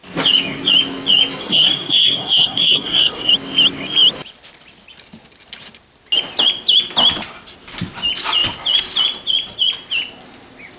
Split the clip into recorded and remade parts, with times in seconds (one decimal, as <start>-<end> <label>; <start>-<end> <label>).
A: 0.0-1.4 recorded; 1.4-3.3 remade; 3.3-10.8 recorded